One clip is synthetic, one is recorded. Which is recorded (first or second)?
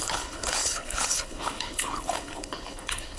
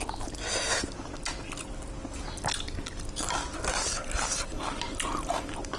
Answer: second